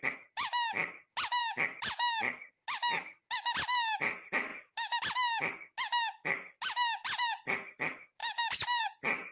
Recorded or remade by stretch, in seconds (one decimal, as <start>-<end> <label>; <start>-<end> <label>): 0.0-9.3 recorded